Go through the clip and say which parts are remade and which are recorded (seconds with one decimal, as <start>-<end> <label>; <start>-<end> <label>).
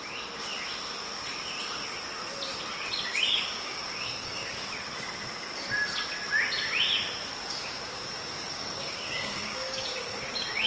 0.0-3.1 recorded; 3.1-4.7 remade; 4.7-7.4 recorded; 7.4-10.7 remade